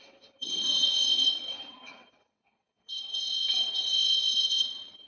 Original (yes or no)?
no